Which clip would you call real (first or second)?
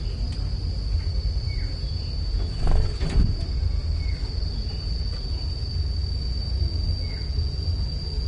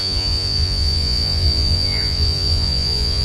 first